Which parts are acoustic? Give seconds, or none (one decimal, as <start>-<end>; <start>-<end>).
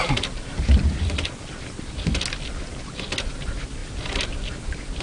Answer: 0.0-5.0